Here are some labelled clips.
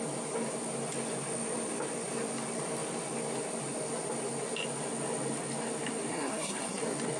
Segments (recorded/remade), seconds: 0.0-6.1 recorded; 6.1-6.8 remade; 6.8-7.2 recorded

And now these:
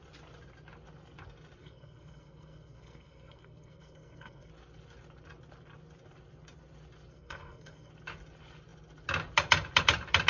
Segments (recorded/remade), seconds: 0.0-1.6 recorded; 1.6-4.5 remade; 4.5-7.1 recorded; 7.1-7.9 remade; 7.9-10.3 recorded

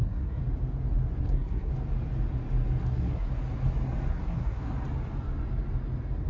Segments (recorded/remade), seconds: 0.0-0.4 remade; 0.4-1.2 recorded; 1.2-1.7 remade; 1.7-2.8 recorded; 2.8-3.3 remade; 3.3-4.1 recorded; 4.1-4.7 remade; 4.7-6.3 recorded